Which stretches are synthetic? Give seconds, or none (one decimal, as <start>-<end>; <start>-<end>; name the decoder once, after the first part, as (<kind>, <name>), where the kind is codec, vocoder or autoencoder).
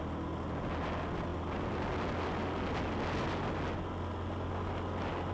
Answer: none